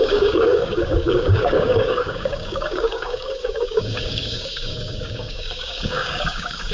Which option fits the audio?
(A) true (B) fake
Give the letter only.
B